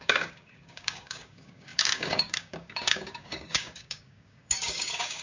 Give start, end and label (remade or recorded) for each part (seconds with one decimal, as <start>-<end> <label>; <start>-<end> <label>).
0.0-5.2 remade